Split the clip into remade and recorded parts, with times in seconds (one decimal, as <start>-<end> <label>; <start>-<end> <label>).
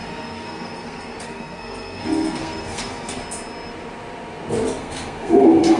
0.0-3.2 remade; 3.2-4.8 recorded; 4.8-5.8 remade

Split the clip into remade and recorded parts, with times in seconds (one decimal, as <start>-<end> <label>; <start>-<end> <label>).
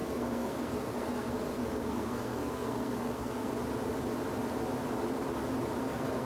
0.0-3.5 remade; 3.5-5.8 recorded; 5.8-6.3 remade